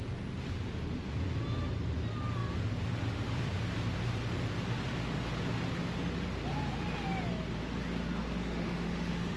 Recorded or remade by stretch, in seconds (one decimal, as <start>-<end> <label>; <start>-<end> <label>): 0.0-8.4 recorded; 8.4-9.4 remade